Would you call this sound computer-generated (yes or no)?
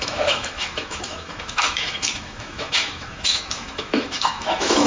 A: yes